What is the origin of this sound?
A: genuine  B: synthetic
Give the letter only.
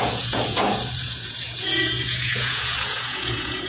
B